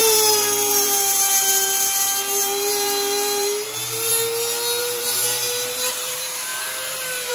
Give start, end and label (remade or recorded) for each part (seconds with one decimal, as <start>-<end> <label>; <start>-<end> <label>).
0.0-4.1 remade; 4.1-4.8 recorded; 4.8-6.5 remade; 6.5-7.3 recorded